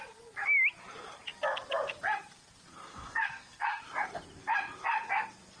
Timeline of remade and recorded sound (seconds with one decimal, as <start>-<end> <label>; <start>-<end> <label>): 0.0-2.8 recorded; 2.8-3.8 remade; 3.8-5.6 recorded